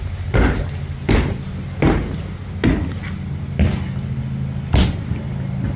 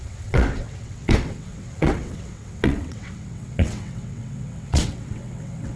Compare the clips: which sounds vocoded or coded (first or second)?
second